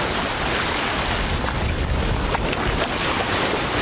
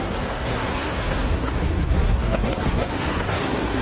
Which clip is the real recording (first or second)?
first